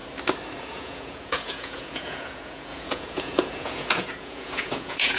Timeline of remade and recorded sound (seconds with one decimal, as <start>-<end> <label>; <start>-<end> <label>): 0.0-0.6 recorded; 0.6-5.2 remade